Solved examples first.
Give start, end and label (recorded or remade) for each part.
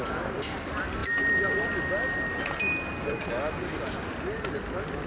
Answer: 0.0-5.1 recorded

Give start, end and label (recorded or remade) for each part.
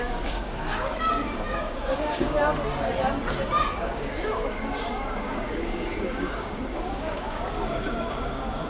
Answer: 0.0-2.4 remade; 2.4-3.6 recorded; 3.6-8.7 remade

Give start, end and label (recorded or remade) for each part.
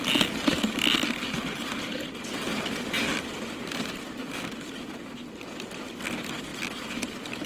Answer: 0.0-4.2 recorded; 4.2-4.9 remade; 4.9-7.5 recorded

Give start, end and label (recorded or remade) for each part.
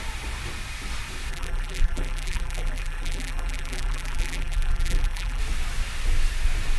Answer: 0.0-1.3 recorded; 1.3-5.4 remade; 5.4-6.8 recorded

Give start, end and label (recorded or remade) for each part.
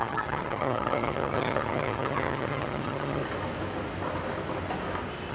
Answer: 0.0-3.2 remade; 3.2-5.3 recorded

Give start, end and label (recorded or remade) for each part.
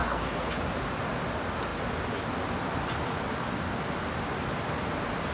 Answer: 0.0-0.6 remade; 0.6-5.3 recorded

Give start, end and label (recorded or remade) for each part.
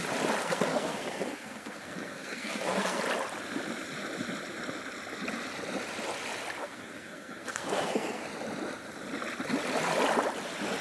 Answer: 0.0-0.4 recorded; 0.4-3.0 remade; 3.0-6.6 recorded; 6.6-8.3 remade; 8.3-10.8 recorded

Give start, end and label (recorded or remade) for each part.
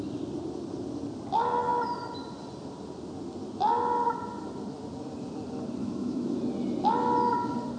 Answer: 0.0-5.8 recorded; 5.8-6.4 remade; 6.4-7.8 recorded